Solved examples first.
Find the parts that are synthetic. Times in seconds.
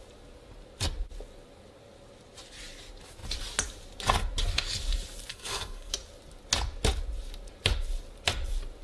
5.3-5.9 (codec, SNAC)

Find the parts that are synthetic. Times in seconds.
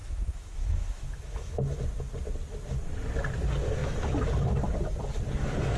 0.0-1.8 (autoencoder, DAC-VAE)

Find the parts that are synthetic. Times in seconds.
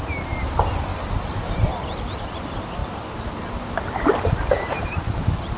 0.0-2.8 (vocoder, BigVGAN v2); 4.7-5.6